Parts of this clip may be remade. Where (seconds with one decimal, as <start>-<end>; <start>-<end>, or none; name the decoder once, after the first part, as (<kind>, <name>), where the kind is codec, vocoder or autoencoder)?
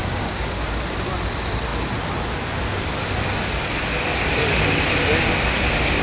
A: 0.0-0.6 (codec, DAC)